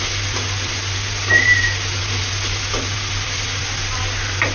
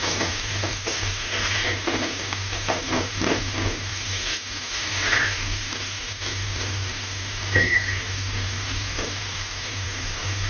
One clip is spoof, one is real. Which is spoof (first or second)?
second